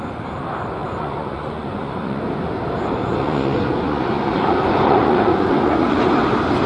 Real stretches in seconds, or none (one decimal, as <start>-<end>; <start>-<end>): 0.0-0.8; 2.2-3.0; 6.1-6.7